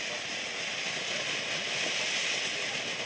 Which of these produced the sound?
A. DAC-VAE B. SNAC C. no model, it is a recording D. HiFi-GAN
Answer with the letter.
C